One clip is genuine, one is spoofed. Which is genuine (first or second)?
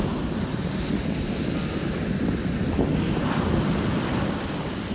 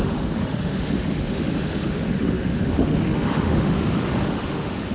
first